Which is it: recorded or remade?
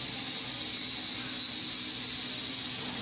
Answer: recorded